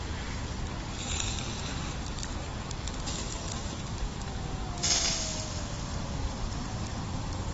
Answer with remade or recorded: recorded